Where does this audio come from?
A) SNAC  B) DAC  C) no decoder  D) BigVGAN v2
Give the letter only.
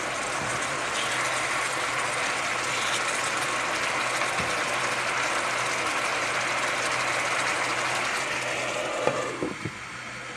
C